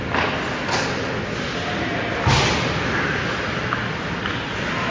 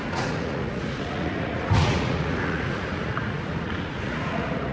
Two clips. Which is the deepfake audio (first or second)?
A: second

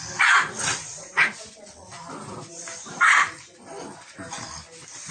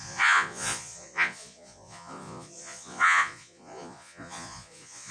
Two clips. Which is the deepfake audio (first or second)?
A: second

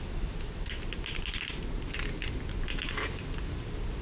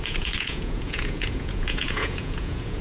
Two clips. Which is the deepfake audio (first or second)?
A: second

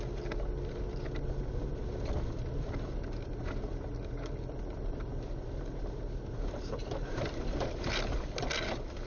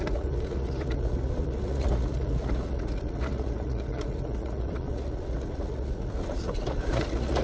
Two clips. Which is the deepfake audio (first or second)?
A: second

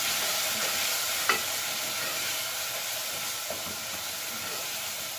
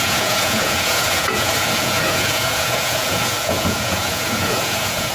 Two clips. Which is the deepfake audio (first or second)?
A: second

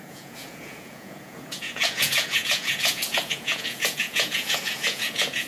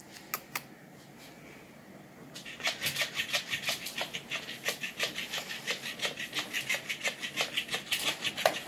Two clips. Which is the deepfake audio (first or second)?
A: first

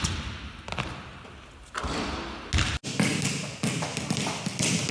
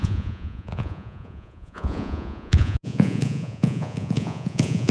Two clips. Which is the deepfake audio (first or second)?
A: second